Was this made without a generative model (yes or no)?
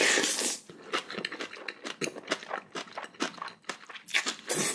yes